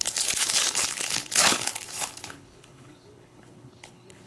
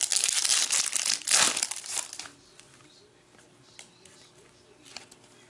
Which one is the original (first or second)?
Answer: second